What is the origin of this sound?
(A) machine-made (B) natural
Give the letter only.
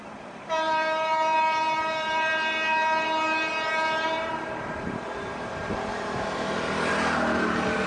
A